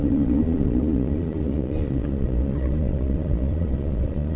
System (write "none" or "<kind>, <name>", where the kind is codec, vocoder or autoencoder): vocoder, Vocos